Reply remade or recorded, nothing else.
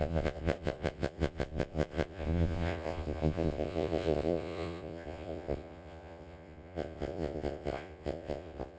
remade